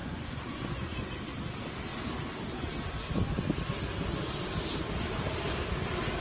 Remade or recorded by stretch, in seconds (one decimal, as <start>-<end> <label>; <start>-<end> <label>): 0.0-1.1 remade; 1.1-6.2 recorded